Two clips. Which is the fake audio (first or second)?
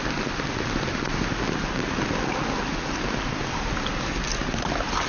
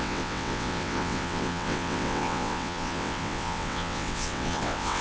second